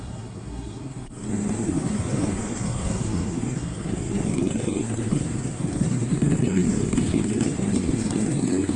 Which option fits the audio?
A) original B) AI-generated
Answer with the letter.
B